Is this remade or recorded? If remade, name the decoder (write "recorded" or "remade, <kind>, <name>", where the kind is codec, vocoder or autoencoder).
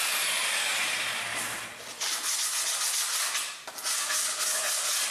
recorded